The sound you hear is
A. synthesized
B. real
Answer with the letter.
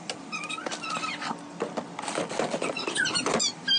B